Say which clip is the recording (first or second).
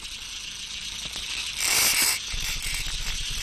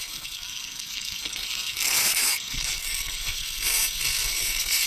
first